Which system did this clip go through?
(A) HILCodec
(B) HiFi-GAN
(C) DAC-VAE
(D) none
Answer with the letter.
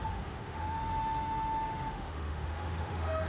C